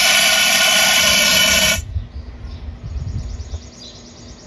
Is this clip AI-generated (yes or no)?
no